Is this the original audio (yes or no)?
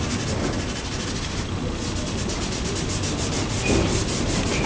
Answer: yes